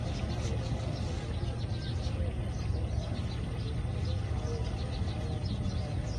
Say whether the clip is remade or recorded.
recorded